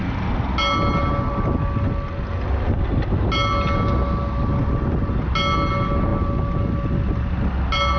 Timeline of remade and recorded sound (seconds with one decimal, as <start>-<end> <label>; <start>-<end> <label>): 0.0-8.0 recorded